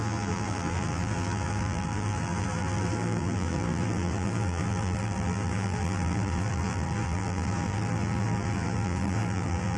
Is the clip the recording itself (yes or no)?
no